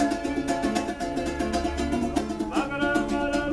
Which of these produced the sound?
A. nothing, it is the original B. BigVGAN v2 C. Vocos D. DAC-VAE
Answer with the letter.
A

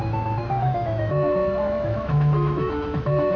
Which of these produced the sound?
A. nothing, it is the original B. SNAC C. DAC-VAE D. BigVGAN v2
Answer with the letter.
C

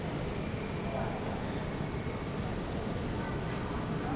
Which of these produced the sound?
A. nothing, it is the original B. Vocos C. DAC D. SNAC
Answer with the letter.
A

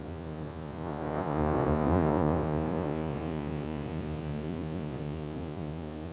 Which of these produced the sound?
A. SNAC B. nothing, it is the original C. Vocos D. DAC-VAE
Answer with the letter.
C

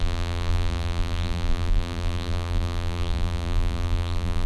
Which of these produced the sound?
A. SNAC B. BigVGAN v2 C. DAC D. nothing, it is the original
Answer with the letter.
B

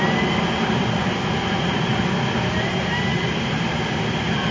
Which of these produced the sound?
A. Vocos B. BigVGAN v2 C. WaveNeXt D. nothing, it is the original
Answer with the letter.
D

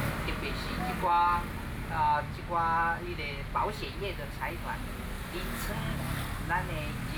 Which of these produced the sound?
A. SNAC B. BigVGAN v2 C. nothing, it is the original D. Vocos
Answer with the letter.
C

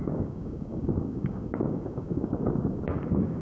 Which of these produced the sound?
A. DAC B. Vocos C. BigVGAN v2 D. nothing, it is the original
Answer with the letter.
A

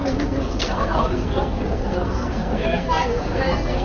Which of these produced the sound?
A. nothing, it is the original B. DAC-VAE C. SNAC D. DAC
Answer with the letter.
C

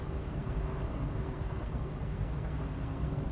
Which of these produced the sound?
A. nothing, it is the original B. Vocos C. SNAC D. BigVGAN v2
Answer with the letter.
C